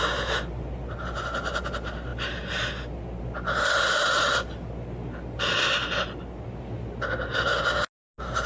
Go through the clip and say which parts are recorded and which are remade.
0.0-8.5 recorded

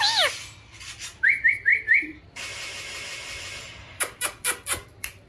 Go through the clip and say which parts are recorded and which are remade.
0.0-5.3 remade

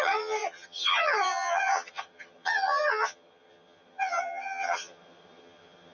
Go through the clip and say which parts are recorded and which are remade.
0.0-5.9 remade

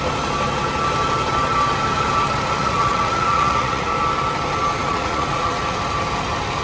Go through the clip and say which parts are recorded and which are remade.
0.0-2.6 recorded; 2.6-3.9 remade; 3.9-4.8 recorded; 4.8-5.8 remade; 5.8-6.6 recorded

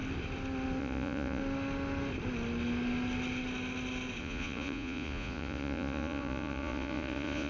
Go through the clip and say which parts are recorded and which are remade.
0.0-0.8 recorded; 0.8-1.4 remade; 1.4-4.2 recorded; 4.2-7.5 remade

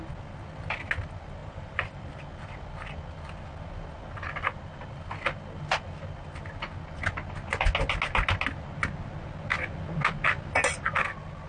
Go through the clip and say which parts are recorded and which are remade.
0.0-1.4 recorded; 1.4-2.2 remade; 2.2-11.5 recorded